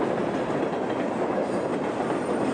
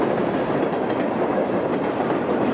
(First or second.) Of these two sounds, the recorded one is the first